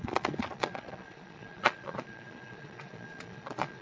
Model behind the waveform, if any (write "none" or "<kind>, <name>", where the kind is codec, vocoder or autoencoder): vocoder, Vocos